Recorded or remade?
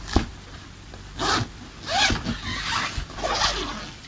recorded